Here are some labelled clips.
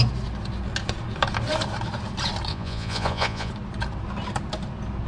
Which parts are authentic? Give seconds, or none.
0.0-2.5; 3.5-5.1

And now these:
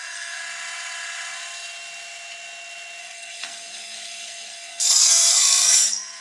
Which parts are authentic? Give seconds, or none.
0.4-3.0

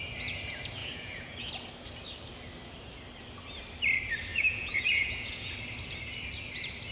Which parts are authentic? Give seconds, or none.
0.0-0.8; 1.5-4.3; 5.5-6.9

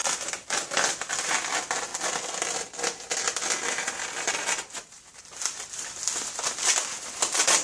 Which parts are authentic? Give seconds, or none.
0.0-7.6

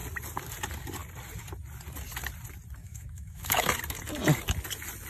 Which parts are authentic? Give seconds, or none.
0.0-2.8; 3.6-5.1